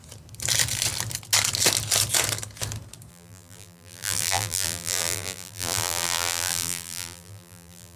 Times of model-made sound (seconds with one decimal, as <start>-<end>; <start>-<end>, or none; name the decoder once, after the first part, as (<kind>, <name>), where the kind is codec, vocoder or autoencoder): 3.1-8.0 (vocoder, BigVGAN v2)